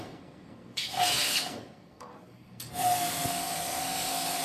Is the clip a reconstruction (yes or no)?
yes